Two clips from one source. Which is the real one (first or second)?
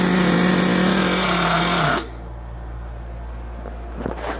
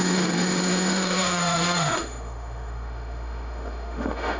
first